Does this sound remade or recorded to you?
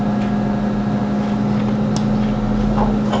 recorded